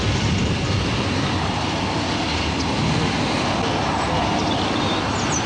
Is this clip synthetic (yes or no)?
no